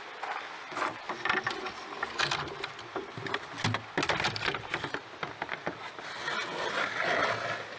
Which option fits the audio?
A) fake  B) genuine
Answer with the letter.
B